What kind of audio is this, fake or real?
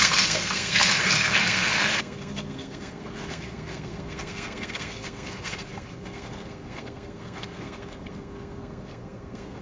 fake